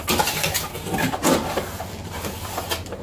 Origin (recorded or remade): recorded